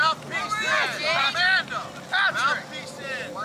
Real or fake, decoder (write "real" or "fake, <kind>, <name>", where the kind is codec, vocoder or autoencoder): fake, vocoder, BigVGAN v2